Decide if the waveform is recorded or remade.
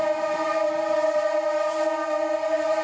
recorded